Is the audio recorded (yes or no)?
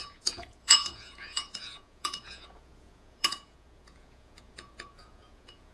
no